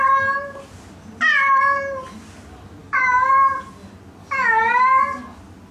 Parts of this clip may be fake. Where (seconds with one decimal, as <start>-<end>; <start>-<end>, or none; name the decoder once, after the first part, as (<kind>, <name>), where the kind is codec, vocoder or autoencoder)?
2.8-3.3 (codec, DAC); 4.2-4.9